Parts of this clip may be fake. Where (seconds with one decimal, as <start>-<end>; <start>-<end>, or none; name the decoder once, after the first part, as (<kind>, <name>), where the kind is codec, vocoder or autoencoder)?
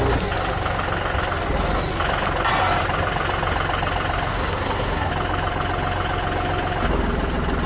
4.3-5.1 (codec, SNAC)